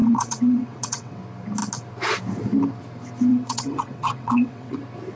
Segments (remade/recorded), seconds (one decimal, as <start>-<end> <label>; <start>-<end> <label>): 0.0-1.2 remade; 1.2-3.3 recorded; 3.3-4.8 remade; 4.8-5.2 recorded